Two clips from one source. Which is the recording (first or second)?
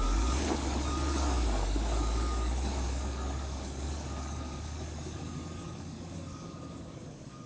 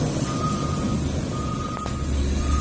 second